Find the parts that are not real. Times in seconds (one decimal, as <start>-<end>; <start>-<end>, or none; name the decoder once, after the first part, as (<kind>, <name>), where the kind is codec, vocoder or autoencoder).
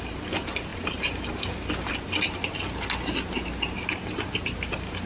none